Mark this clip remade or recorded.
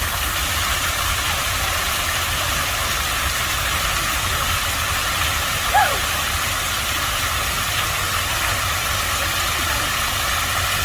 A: remade